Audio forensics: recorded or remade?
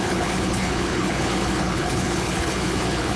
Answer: remade